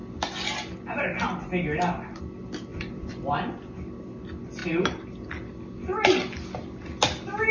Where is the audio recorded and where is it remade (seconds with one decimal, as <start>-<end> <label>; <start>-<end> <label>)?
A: 0.0-2.7 recorded; 2.7-3.3 remade; 3.3-4.6 recorded; 4.6-5.3 remade; 5.3-7.5 recorded